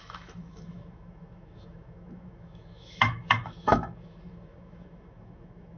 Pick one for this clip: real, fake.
fake